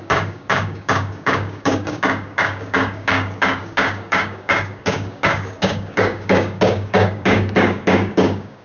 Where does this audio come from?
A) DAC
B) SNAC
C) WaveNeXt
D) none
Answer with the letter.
A